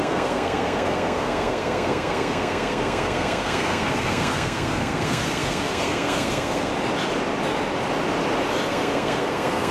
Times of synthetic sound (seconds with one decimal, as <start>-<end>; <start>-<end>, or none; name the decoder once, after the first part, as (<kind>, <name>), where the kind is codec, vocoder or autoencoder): 0.0-6.7 (codec, SNAC); 8.7-9.7